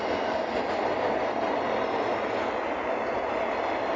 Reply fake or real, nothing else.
real